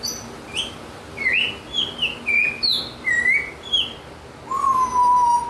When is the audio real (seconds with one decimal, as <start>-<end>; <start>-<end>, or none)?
0.0-5.5

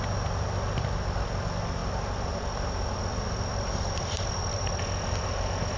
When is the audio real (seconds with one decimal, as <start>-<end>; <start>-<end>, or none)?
0.0-3.1; 4.7-5.8

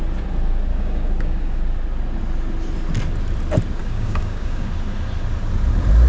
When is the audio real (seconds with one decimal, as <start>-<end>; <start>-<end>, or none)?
0.0-0.7; 1.6-3.8; 4.7-6.1